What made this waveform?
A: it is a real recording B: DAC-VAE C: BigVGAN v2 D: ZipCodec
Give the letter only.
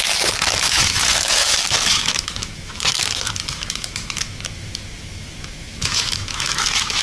B